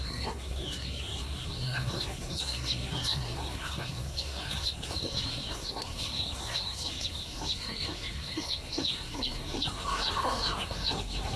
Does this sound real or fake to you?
fake